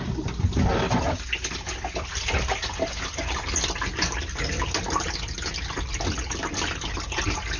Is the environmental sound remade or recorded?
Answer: recorded